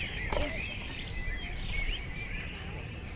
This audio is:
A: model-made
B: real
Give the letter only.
A